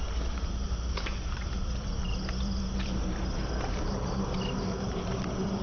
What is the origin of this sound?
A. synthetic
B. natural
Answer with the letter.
A